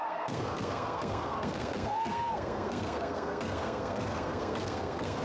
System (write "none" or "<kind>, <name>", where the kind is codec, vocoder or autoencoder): codec, SNAC